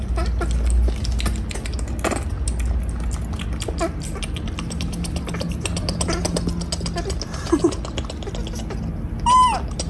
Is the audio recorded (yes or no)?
yes